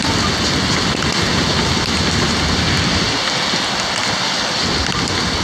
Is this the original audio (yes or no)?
yes